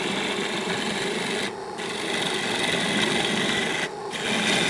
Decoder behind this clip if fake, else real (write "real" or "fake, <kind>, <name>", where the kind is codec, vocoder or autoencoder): real